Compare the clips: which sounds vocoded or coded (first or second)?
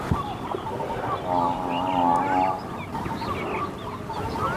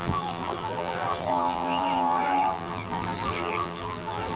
second